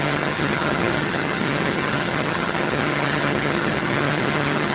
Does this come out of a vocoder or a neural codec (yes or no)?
yes